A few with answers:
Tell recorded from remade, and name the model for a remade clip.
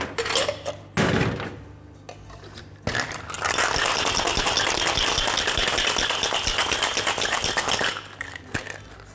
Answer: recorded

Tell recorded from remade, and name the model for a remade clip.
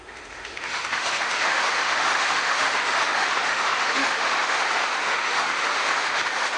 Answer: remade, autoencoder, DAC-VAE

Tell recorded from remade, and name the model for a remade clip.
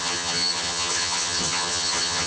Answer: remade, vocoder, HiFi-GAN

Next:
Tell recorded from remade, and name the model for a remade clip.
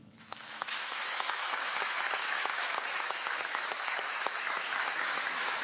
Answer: remade, autoencoder, DAC-VAE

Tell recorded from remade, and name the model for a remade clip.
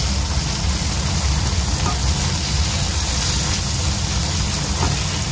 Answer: recorded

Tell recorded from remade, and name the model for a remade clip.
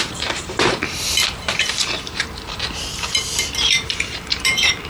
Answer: remade, vocoder, BigVGAN v2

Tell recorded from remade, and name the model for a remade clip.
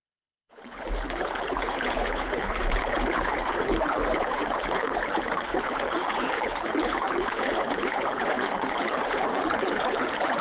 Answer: remade, codec, HILCodec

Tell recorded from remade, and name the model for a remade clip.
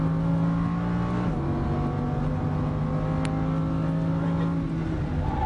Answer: recorded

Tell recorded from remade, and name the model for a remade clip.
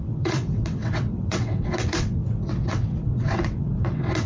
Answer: remade, vocoder, WaveNeXt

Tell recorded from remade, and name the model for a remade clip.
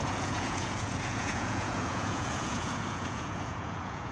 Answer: remade, vocoder, Vocos